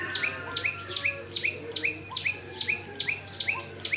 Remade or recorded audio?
recorded